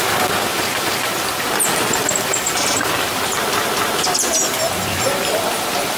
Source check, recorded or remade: recorded